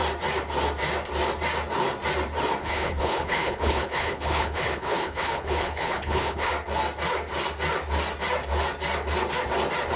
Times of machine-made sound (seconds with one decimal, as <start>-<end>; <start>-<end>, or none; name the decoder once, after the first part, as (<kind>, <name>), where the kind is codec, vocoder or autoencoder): 2.6-6.5 (codec, HILCodec)